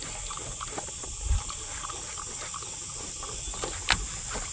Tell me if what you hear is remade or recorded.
recorded